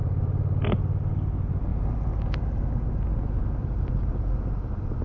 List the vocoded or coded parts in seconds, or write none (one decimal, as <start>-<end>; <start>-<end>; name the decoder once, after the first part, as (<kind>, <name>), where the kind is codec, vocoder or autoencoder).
none